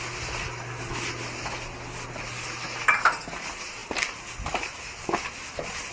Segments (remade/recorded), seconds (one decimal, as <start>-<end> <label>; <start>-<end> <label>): 0.0-5.9 recorded